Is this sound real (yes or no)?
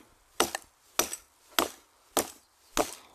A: yes